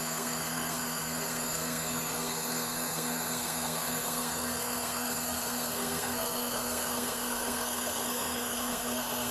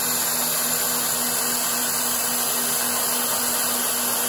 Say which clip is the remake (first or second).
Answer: first